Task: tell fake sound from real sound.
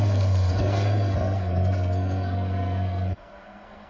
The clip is fake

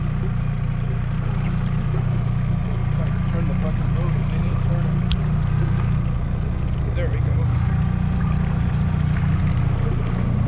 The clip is real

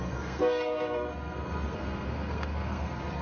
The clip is fake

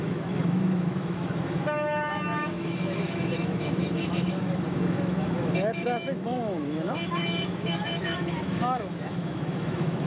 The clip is fake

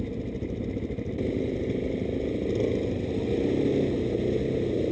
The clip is real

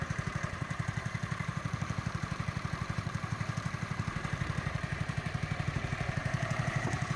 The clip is fake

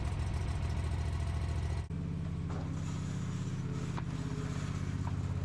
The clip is real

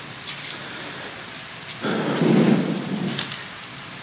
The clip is real